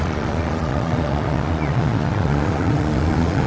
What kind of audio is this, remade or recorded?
remade